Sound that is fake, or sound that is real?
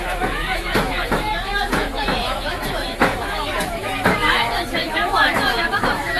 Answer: fake